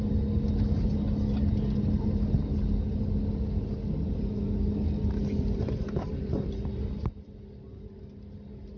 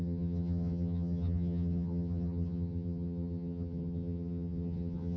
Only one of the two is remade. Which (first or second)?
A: second